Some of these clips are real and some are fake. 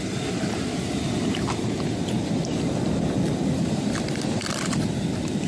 real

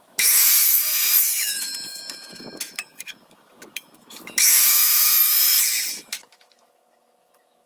fake